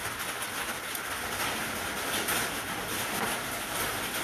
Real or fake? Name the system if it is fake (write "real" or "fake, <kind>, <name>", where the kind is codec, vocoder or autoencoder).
real